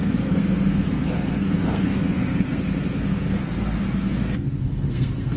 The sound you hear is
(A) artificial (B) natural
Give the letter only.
A